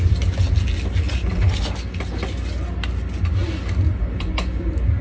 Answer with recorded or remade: recorded